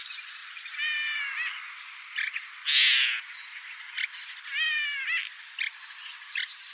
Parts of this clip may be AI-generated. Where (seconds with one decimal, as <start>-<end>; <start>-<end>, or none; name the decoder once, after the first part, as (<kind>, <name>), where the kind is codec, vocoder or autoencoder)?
none